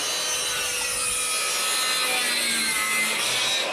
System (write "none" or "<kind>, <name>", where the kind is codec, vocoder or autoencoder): none